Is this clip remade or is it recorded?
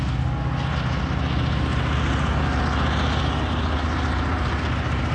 recorded